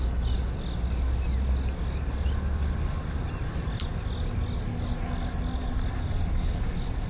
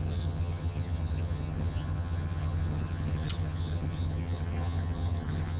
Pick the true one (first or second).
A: first